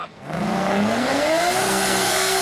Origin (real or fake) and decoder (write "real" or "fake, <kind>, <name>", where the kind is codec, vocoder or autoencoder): fake, codec, SNAC